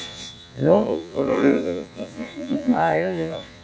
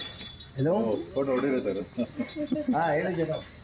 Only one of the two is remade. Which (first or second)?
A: first